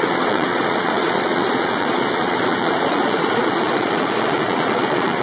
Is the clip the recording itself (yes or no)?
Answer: no